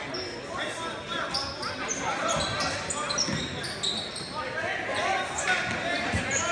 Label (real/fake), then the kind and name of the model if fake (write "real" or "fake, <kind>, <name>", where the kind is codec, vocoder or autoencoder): real